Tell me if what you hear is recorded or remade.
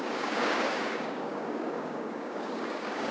remade